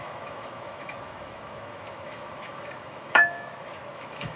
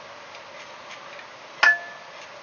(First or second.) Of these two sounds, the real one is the second